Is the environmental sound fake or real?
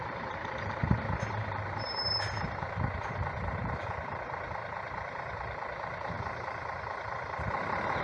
fake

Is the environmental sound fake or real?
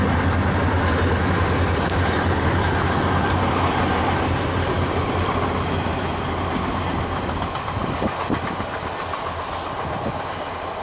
real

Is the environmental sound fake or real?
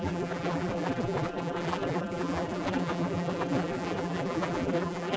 fake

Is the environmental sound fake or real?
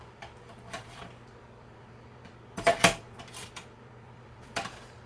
fake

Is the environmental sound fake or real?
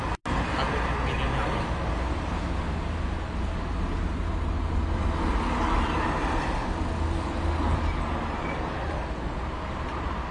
real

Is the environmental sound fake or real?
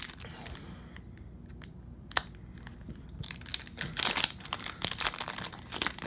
real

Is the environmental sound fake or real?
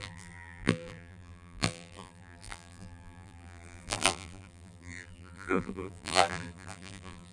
fake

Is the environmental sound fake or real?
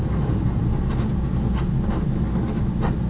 real